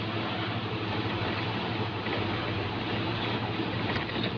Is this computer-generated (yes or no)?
no